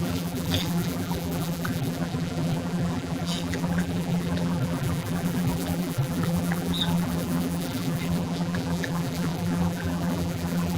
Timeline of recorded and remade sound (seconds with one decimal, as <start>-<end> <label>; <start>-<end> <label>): 0.0-10.8 remade

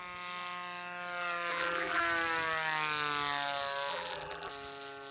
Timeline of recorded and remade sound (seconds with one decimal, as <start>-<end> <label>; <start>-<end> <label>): 0.0-1.5 recorded; 1.5-2.0 remade; 2.0-3.9 recorded; 3.9-4.5 remade; 4.5-5.1 recorded